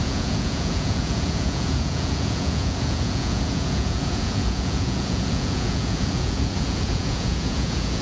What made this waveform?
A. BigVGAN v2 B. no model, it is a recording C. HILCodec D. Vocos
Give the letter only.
D